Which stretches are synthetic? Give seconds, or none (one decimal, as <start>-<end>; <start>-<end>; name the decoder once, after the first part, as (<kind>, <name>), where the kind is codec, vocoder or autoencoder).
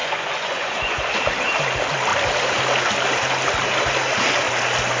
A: 0.0-1.2 (vocoder, Vocos)